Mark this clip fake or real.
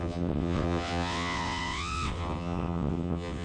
fake